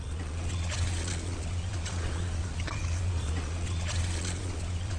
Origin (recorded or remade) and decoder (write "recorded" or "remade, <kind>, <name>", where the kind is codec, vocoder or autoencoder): remade, vocoder, Vocos